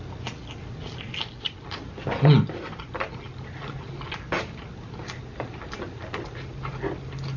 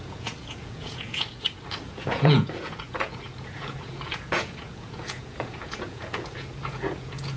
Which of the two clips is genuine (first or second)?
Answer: first